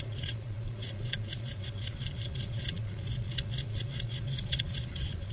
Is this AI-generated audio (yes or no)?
yes